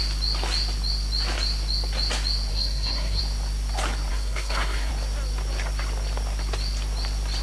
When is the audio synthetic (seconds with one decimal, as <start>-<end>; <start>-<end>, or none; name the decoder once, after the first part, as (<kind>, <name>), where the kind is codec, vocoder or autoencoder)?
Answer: 2.5-3.2 (codec, SNAC); 4.1-4.9